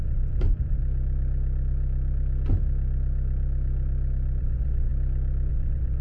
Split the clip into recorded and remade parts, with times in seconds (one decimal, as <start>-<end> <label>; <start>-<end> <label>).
0.0-0.8 remade; 0.8-4.4 recorded; 4.4-4.9 remade; 4.9-5.5 recorded; 5.5-6.0 remade